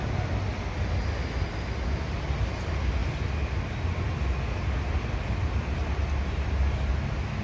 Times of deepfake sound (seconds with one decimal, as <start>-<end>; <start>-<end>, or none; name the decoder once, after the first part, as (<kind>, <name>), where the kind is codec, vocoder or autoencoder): none